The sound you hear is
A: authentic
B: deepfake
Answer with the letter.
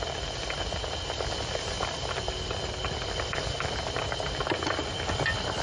A